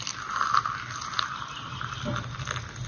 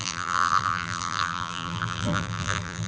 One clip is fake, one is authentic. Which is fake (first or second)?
second